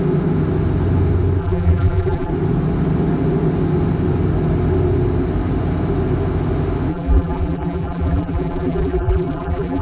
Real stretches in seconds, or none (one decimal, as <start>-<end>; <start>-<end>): 0.0-1.4; 2.3-6.9